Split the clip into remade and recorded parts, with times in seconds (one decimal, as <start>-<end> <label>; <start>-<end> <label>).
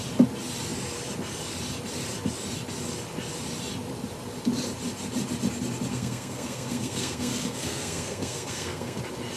0.0-5.9 recorded; 5.9-9.0 remade; 9.0-9.4 recorded